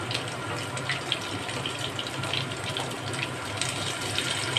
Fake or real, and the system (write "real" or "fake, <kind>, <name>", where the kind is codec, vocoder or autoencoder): real